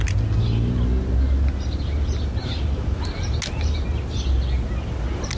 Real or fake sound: real